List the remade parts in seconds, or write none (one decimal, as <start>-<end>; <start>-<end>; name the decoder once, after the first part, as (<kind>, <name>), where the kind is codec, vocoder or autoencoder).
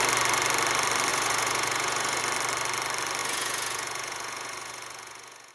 1.1-2.2 (vocoder, Vocos); 3.2-5.5